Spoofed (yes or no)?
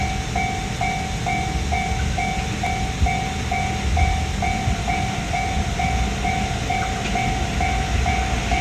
no